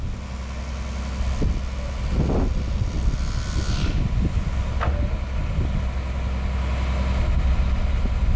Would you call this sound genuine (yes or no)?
yes